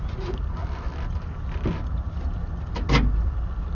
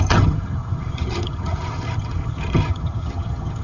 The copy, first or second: second